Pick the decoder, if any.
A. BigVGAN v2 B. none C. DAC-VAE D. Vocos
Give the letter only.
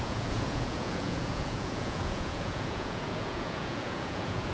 D